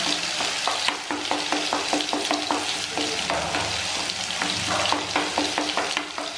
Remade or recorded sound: recorded